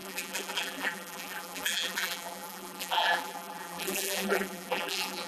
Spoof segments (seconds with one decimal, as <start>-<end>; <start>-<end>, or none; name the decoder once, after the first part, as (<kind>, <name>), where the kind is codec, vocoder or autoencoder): 0.0-5.3 (vocoder, BigVGAN v2)